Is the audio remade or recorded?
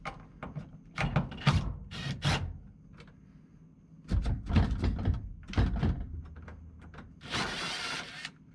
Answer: recorded